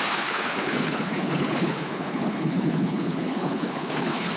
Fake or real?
fake